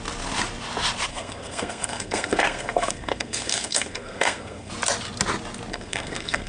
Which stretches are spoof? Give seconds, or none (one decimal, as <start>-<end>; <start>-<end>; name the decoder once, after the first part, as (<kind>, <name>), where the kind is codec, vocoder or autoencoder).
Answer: 1.1-4.7 (codec, SNAC); 5.7-6.5